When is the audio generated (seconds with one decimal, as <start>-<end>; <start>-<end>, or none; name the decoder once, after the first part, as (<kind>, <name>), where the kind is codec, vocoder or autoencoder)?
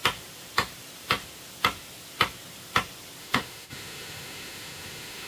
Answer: 3.2-5.3 (autoencoder, DAC-VAE)